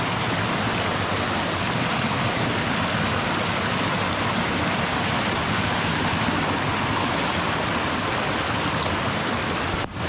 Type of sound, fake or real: real